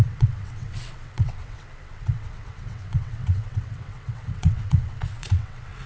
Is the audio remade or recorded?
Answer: remade